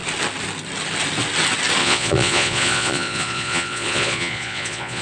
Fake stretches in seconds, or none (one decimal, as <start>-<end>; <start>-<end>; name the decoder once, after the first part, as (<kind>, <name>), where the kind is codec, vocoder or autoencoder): 1.8-5.0 (vocoder, Vocos)